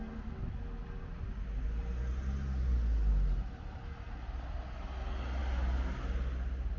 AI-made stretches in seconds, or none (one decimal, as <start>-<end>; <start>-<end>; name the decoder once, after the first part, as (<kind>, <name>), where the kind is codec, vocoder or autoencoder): none